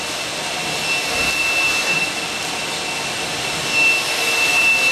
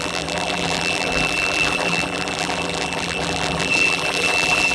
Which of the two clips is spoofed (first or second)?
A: second